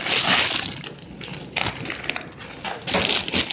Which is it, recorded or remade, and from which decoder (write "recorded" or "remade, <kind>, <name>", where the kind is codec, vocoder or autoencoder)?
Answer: recorded